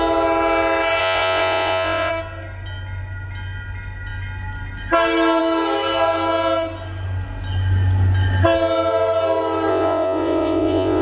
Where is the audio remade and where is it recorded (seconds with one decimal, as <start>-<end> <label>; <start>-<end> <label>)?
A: 0.0-1.0 recorded; 1.0-2.1 remade; 2.1-9.7 recorded; 9.7-11.0 remade